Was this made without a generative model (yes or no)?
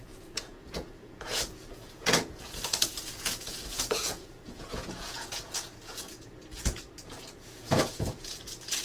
no